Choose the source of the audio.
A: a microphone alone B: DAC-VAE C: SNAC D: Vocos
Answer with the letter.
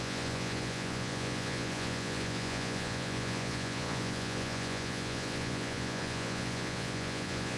D